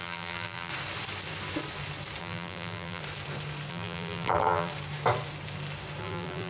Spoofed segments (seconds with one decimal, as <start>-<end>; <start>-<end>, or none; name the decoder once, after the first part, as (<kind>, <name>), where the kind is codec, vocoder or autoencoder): 0.0-0.7 (vocoder, BigVGAN v2); 2.2-3.0; 3.7-4.7; 6.0-6.5